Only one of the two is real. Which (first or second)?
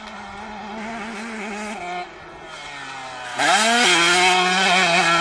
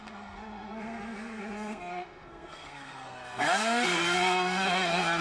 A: first